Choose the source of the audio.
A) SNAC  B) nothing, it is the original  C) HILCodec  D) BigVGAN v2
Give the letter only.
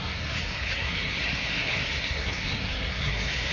A